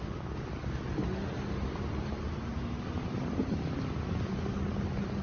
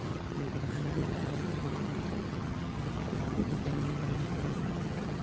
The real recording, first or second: first